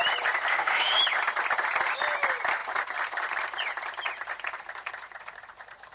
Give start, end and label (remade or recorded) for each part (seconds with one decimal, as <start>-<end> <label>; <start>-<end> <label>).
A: 0.0-0.5 recorded; 0.5-1.0 remade; 1.0-5.9 recorded